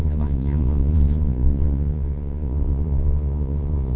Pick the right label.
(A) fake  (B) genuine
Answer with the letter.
A